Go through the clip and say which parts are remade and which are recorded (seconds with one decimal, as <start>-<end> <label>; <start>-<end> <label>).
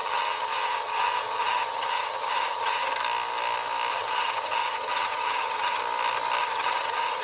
0.0-2.9 remade; 2.9-3.9 recorded; 3.9-5.8 remade; 5.8-6.4 recorded; 6.4-7.2 remade